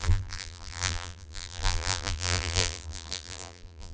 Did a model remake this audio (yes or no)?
yes